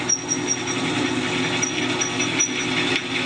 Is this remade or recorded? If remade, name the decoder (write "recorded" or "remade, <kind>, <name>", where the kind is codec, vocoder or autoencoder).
recorded